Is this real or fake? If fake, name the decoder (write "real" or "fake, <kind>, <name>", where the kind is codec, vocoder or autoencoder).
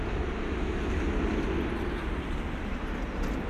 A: real